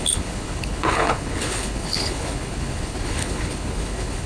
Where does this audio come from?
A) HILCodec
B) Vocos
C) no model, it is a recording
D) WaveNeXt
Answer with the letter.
A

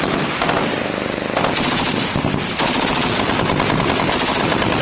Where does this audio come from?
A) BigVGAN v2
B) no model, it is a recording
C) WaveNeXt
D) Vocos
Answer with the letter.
B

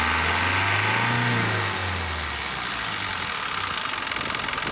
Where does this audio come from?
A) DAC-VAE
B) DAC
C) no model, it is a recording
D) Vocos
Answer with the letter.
C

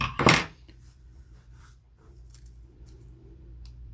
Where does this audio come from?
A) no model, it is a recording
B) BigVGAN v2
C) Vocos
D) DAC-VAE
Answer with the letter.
B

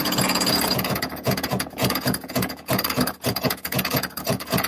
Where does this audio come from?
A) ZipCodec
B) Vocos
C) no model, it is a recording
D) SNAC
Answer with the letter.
B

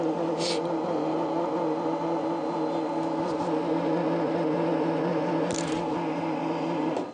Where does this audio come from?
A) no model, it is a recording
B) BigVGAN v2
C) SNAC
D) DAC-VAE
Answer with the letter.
A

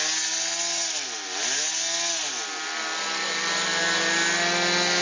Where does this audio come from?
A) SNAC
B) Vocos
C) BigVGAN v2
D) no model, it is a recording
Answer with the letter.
D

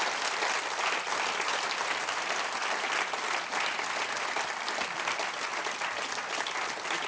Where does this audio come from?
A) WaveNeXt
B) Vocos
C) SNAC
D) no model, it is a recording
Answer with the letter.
D